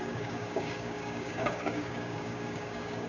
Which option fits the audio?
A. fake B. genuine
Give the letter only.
A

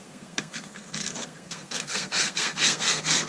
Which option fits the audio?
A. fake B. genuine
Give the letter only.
A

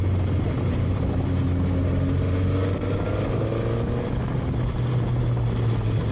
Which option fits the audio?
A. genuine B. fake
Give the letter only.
A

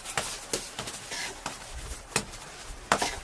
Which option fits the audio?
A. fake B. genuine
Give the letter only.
B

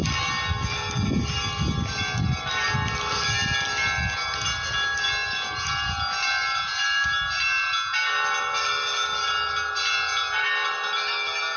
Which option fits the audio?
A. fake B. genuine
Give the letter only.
B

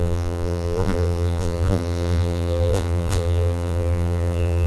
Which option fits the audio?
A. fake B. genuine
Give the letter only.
A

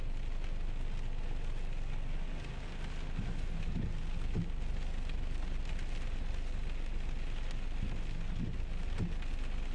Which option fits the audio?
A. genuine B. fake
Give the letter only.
A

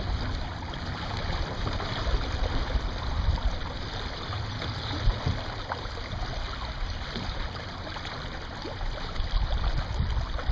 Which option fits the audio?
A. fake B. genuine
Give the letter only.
B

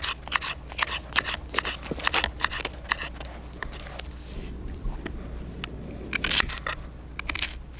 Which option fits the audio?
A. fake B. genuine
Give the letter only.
B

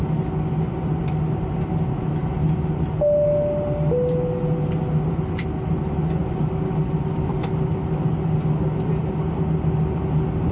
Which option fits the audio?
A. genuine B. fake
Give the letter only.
A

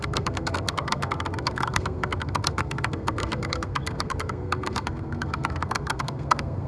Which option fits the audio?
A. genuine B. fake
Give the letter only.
B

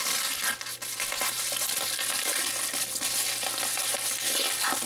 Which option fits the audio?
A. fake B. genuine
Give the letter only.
B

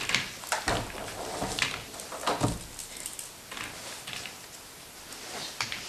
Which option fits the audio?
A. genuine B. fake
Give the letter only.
A